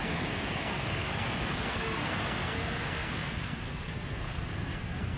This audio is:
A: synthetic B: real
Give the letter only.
A